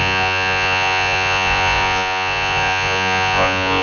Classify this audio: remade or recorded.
remade